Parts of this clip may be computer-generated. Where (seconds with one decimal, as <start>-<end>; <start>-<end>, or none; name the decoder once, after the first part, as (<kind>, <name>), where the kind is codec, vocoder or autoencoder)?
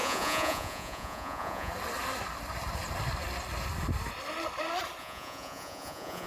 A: 0.0-1.7 (vocoder, Vocos); 5.0-6.3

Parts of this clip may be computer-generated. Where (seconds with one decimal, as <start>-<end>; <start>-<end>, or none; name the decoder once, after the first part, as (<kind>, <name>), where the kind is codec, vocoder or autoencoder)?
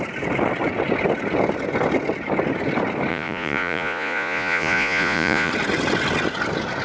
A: 3.1-5.5 (vocoder, Vocos)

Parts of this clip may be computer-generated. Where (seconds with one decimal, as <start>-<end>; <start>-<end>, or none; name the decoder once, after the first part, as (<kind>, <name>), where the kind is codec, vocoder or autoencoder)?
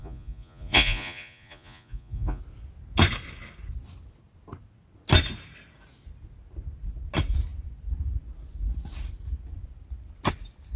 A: 0.0-2.4 (vocoder, Vocos)